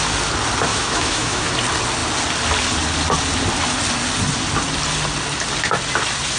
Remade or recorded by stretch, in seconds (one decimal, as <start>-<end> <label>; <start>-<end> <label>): 0.0-0.7 recorded; 0.7-1.5 remade; 1.5-6.4 recorded